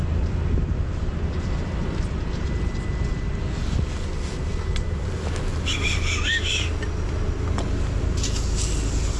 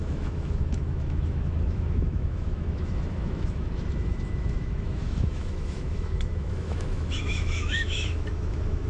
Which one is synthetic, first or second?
second